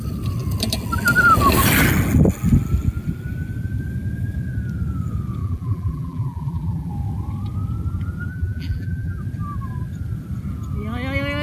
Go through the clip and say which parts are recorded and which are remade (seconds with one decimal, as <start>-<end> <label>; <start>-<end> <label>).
0.0-5.4 recorded; 5.4-6.9 remade; 6.9-8.3 recorded; 8.3-9.2 remade; 9.2-11.4 recorded